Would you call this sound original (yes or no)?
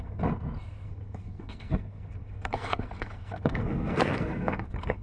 no